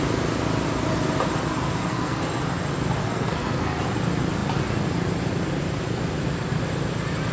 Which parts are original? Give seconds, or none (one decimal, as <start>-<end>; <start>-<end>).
0.0-1.8; 2.4-3.0; 3.8-7.3